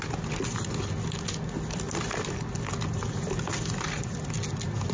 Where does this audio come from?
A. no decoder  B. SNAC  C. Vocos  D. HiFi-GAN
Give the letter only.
A